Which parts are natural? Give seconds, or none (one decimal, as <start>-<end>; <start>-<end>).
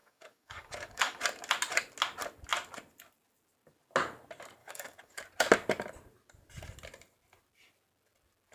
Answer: 1.2-4.6; 5.2-8.5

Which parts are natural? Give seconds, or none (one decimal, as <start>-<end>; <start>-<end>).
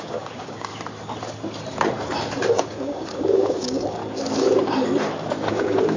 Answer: 0.7-2.5; 4.0-5.5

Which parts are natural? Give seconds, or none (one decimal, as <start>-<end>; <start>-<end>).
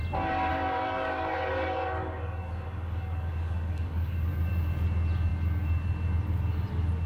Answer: 0.0-0.5; 4.3-7.1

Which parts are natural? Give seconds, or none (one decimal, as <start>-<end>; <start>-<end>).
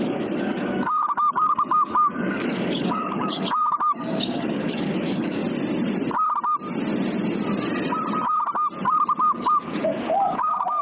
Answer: 5.4-9.2